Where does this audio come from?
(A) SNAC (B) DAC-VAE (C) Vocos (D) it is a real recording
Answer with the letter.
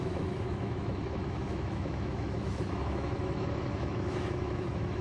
B